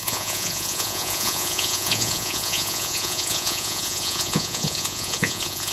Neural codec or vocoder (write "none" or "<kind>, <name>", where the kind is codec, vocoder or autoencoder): vocoder, Vocos